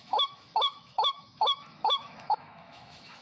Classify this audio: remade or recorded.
remade